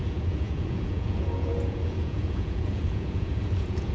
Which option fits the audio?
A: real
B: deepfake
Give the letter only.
B